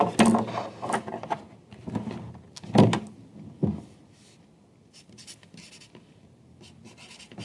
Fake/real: real